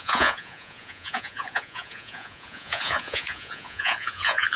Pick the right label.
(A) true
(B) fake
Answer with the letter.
B